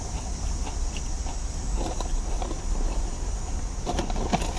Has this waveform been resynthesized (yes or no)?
no